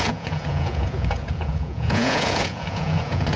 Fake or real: fake